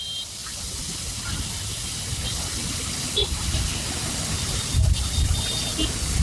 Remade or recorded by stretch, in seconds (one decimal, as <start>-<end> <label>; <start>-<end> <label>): 0.0-6.2 recorded